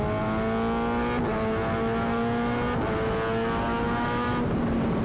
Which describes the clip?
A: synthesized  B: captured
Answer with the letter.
B